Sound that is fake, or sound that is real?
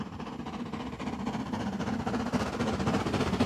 real